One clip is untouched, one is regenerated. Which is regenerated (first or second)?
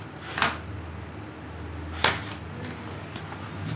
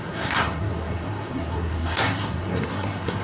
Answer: second